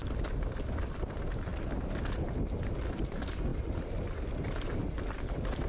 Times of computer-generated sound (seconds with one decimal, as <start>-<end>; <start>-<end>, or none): 0.0-1.5; 3.0-5.7